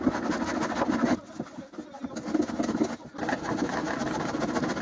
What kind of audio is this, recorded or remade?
recorded